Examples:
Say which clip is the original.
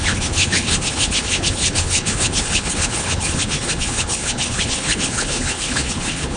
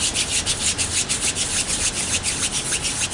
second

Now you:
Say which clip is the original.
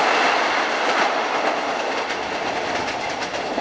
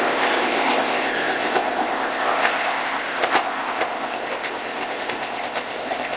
first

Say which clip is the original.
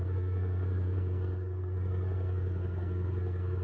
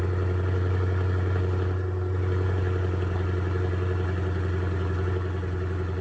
second